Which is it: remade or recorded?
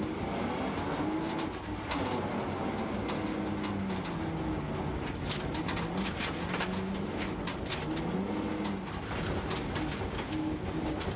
recorded